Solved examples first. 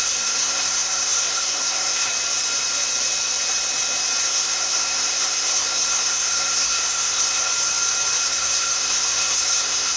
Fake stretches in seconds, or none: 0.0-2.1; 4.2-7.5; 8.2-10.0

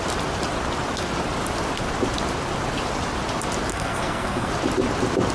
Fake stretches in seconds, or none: 3.7-4.5